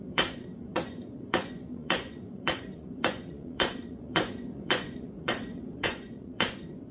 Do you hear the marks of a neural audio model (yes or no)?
yes